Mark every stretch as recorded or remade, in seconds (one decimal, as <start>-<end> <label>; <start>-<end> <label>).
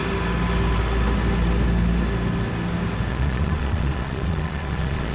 0.0-3.1 recorded; 3.1-5.1 remade